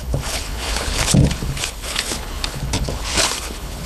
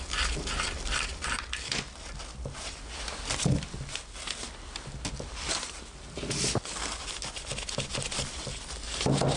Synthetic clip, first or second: first